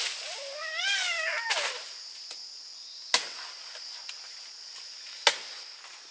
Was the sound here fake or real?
real